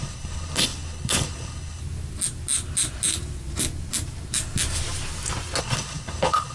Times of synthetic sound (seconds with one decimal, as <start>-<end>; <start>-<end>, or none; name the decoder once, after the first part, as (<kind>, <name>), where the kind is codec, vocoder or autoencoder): 0.0-1.8 (codec, HILCodec); 5.6-6.5